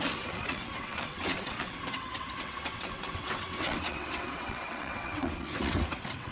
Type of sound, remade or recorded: remade